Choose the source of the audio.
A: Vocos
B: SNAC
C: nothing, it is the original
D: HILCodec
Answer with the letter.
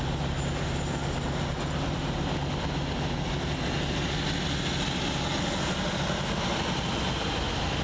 C